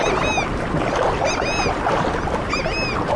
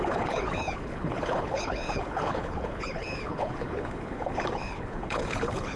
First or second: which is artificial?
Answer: second